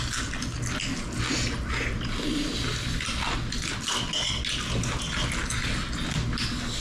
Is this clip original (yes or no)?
yes